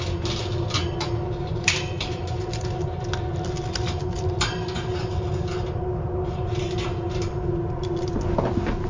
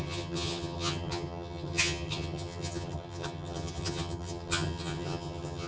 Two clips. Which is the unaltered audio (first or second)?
first